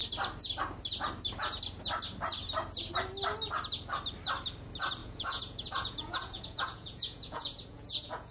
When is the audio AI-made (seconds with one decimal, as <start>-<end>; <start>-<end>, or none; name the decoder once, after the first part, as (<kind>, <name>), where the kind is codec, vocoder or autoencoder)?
5.0-8.3 (vocoder, Vocos)